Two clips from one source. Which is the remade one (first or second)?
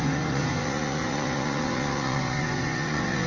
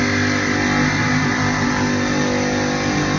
first